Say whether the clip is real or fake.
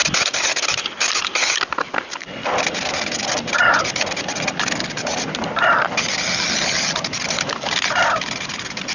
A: real